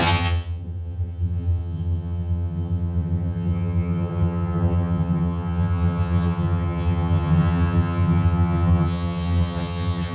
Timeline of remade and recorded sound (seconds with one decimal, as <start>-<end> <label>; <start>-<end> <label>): 0.0-10.1 remade

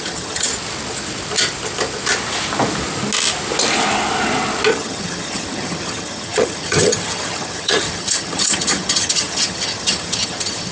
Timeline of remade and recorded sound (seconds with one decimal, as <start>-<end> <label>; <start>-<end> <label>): 0.0-0.5 remade; 0.5-4.7 recorded; 4.7-10.7 remade

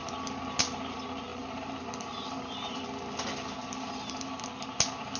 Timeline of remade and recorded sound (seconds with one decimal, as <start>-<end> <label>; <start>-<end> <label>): 0.0-0.6 remade; 0.6-1.3 recorded; 1.3-4.4 remade; 4.4-5.2 recorded

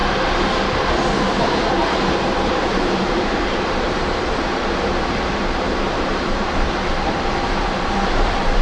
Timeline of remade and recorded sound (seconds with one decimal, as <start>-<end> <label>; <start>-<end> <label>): 0.0-2.2 recorded; 2.2-8.6 remade

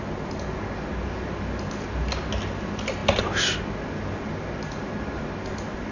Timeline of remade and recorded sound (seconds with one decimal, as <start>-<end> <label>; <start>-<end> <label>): 0.0-5.9 recorded

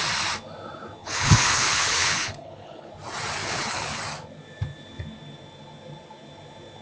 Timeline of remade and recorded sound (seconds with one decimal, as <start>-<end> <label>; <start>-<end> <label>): 0.0-1.0 recorded; 1.0-2.9 remade; 2.9-3.4 recorded; 3.4-4.0 remade; 4.0-6.8 recorded

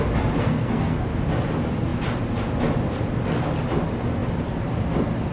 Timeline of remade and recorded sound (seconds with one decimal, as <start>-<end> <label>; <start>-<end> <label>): 0.0-0.4 recorded; 0.4-1.1 remade; 1.1-5.3 recorded